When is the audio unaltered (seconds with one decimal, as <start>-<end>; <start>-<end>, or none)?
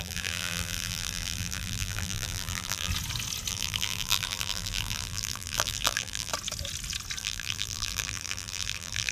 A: 2.9-3.5; 6.3-7.2